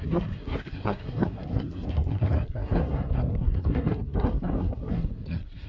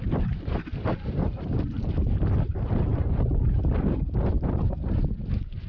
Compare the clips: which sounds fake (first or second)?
first